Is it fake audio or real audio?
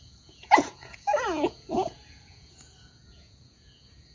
fake